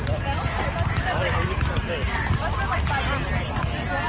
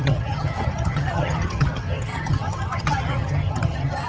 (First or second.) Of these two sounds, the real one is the first